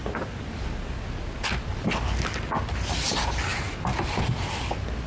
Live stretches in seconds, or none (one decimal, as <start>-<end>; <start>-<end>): 0.0-5.1